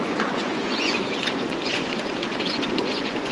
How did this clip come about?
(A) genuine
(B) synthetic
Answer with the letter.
B